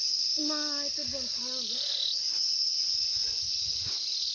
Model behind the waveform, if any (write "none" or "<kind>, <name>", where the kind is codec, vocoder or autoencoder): none